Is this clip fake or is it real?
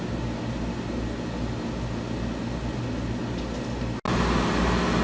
real